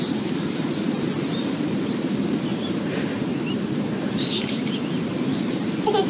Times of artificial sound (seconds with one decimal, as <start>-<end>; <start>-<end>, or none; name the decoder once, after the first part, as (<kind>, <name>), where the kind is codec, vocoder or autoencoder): 0.0-6.1 (vocoder, BigVGAN v2)